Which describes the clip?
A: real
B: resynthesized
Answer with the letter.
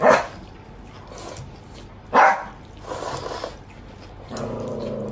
A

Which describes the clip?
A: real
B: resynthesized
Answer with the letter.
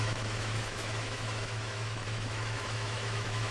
B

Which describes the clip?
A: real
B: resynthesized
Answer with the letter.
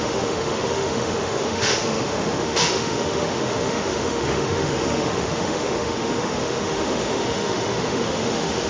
B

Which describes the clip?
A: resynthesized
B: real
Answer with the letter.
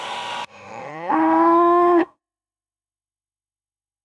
A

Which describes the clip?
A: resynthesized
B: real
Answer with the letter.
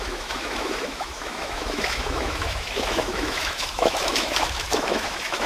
A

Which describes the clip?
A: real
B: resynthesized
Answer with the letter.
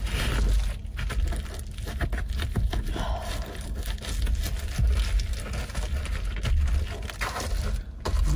A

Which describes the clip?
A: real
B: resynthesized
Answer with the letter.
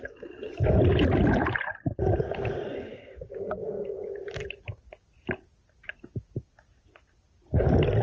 A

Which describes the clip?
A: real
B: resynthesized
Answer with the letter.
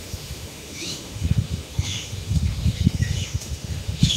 B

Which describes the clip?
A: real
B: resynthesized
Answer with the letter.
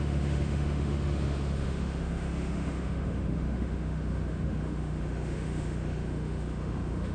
B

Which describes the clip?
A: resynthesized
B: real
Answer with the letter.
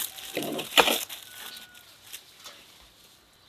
B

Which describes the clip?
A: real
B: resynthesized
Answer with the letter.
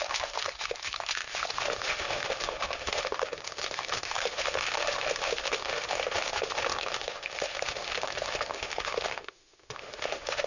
B